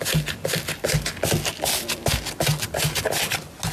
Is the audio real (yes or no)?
yes